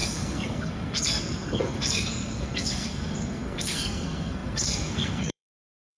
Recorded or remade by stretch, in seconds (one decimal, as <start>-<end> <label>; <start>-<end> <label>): 0.0-6.0 remade